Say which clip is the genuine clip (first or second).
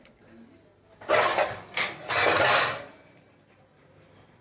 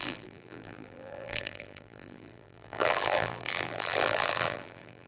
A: first